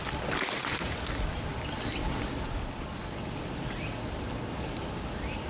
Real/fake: real